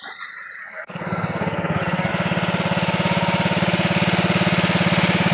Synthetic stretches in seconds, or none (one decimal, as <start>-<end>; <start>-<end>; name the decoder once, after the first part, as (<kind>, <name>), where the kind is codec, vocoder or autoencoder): 0.6-2.1 (codec, SNAC)